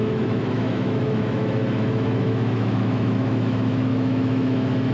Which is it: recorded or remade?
remade